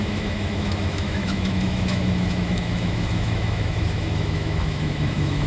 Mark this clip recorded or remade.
remade